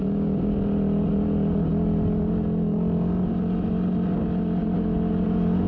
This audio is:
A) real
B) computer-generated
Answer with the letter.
A